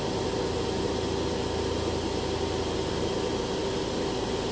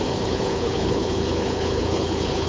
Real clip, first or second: first